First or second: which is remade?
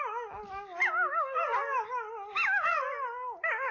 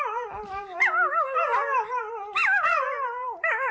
second